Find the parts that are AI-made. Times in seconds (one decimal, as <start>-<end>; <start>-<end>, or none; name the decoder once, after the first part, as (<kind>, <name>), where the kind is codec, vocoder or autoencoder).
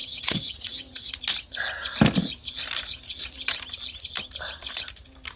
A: 0.0-1.1 (vocoder, WaveNeXt)